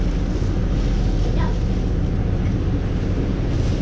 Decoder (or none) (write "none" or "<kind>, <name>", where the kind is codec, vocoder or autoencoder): none